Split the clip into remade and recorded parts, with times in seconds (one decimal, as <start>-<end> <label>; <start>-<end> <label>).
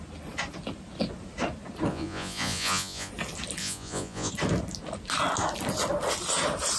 0.0-1.9 recorded; 1.9-3.1 remade; 3.1-3.6 recorded; 3.6-4.3 remade; 4.3-6.8 recorded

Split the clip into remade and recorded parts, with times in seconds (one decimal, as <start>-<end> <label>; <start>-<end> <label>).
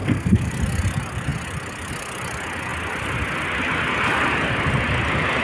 0.0-0.5 remade; 0.5-5.4 recorded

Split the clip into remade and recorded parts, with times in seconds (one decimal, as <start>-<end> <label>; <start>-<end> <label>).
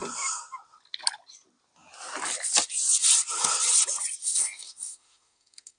0.0-4.2 recorded; 4.2-5.8 remade